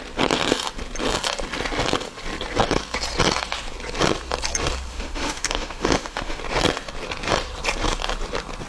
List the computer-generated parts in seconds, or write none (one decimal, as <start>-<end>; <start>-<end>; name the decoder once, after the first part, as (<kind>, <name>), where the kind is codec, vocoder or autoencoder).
4.9-6.4 (autoencoder, DAC-VAE)